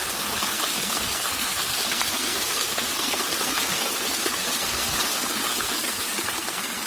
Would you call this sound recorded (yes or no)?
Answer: no